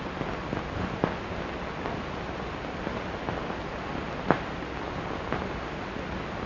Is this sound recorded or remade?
recorded